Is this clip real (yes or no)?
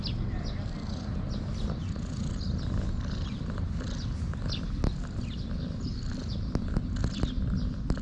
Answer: yes